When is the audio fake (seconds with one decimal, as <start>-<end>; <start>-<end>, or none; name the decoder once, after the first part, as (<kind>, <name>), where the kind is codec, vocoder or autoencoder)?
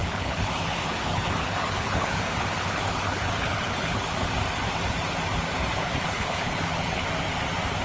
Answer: 0.0-4.3 (codec, HILCodec); 5.8-7.0